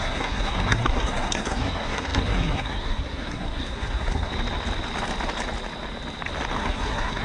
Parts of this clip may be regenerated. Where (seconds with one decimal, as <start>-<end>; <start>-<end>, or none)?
0.0-4.3; 6.6-7.2